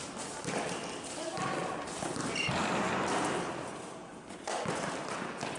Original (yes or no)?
yes